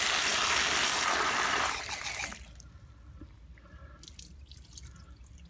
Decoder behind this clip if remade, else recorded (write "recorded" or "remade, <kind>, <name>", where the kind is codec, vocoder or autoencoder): recorded